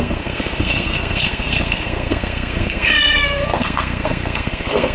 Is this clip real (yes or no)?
no